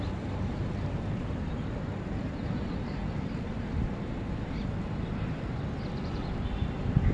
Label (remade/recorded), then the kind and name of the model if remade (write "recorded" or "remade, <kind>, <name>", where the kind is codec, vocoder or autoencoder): remade, vocoder, BigVGAN v2